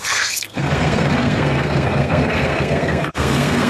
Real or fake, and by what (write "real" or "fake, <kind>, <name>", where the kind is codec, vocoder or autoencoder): fake, codec, SNAC